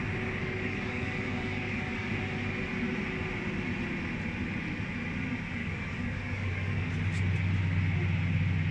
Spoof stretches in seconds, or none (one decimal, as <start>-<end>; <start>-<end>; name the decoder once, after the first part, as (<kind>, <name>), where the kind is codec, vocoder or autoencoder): 0.4-2.1 (codec, DAC); 5.6-6.9